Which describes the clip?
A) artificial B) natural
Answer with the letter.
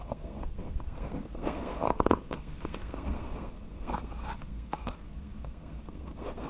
A